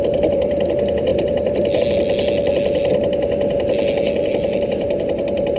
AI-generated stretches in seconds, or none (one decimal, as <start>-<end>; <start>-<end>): 1.1-1.8